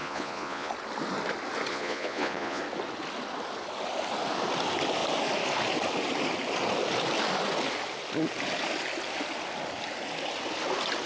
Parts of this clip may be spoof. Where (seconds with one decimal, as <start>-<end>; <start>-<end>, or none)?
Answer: 0.0-0.7; 1.7-2.6